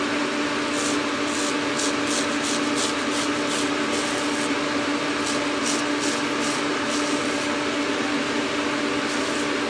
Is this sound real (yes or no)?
yes